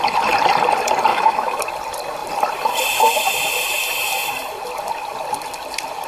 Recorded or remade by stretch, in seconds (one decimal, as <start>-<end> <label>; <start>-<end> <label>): 0.0-1.1 recorded; 1.1-1.6 remade; 1.6-6.1 recorded